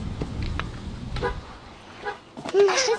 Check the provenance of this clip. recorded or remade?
remade